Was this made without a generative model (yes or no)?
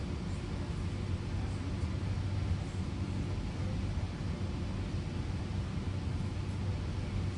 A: yes